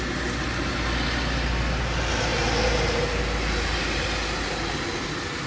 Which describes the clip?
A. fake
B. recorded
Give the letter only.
B